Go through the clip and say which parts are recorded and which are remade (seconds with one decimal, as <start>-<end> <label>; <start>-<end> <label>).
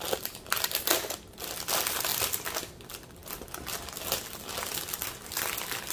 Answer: 0.0-5.9 recorded